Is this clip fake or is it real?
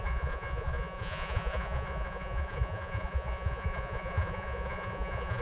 fake